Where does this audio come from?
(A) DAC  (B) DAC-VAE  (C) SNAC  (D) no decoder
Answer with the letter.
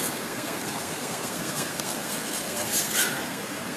C